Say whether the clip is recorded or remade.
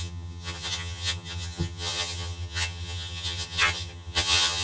remade